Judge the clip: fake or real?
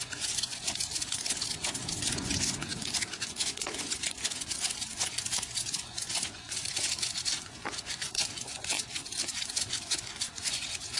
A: fake